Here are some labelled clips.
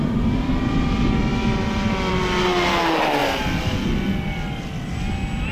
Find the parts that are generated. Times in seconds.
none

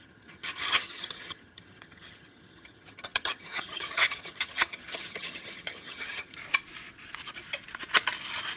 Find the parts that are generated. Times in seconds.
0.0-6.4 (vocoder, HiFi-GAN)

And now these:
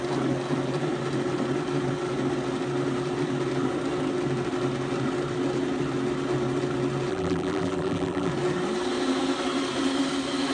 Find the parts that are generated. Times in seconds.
7.1-8.3 (vocoder, BigVGAN v2)